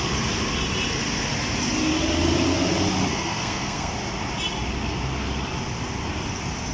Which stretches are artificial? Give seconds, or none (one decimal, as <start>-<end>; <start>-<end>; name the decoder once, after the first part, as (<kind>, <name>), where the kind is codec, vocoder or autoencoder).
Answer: 3.1-3.9 (codec, SNAC)

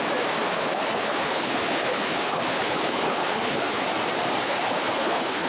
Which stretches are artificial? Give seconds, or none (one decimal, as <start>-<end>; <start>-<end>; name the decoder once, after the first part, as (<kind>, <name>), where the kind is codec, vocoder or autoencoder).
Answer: 0.5-3.8 (codec, HILCodec); 4.4-5.5